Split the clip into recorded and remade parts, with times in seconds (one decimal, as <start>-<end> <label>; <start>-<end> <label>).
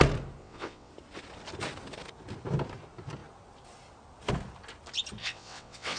0.0-0.4 recorded; 0.4-0.9 remade; 0.9-5.2 recorded; 5.2-6.0 remade